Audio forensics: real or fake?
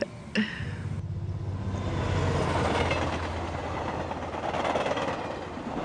real